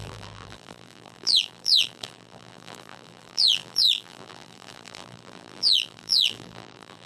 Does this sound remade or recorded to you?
remade